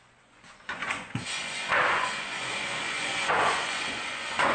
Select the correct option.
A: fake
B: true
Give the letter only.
A